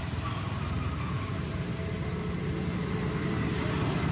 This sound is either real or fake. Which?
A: real